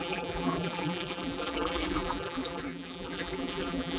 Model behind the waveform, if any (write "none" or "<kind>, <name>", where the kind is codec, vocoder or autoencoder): vocoder, BigVGAN v2